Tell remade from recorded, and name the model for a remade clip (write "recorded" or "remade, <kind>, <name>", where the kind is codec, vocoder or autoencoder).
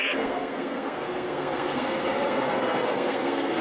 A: remade, codec, SNAC